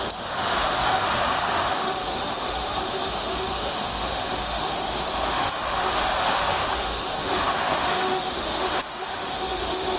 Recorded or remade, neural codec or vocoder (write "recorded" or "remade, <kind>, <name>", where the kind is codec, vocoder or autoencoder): remade, autoencoder, DAC-VAE